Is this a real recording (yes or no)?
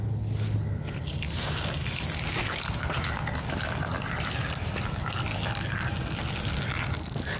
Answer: yes